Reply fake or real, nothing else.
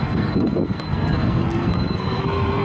fake